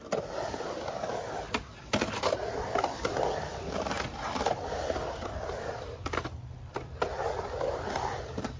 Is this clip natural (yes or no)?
yes